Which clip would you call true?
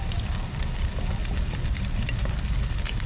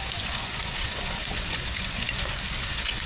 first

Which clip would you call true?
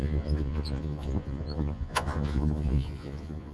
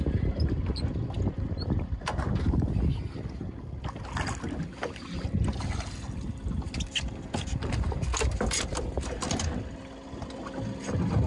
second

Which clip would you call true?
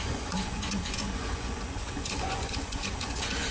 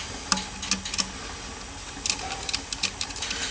second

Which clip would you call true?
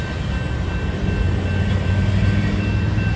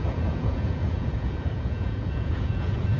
first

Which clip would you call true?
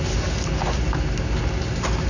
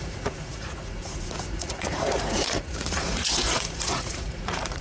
first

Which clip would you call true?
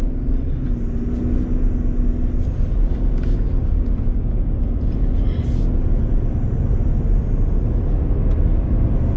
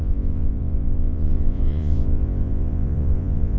first